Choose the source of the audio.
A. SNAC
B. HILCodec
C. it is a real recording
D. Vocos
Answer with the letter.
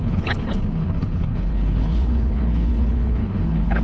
B